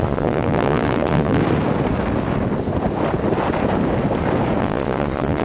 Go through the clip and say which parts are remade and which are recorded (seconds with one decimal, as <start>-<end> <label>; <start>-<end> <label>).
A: 0.0-1.4 remade; 1.4-4.6 recorded; 4.6-5.4 remade